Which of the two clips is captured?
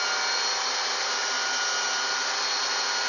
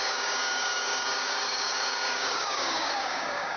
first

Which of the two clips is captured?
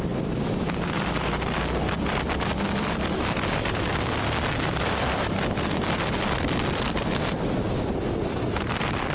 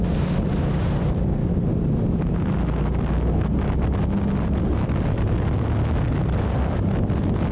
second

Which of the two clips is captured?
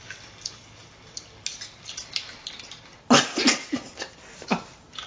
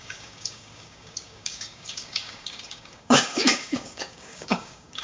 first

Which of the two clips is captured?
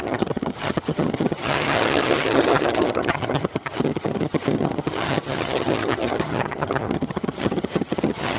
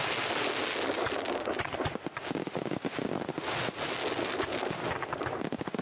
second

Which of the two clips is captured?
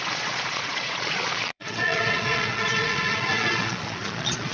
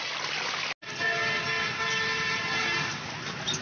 second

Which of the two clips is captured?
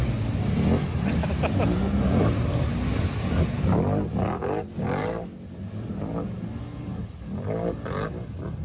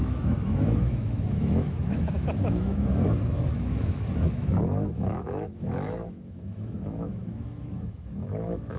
first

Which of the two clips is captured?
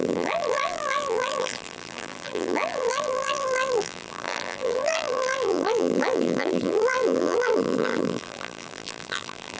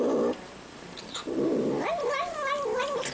second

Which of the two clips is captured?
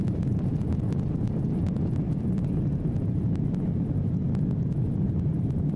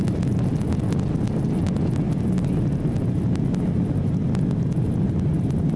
second